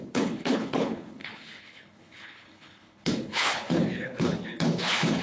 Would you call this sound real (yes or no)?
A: no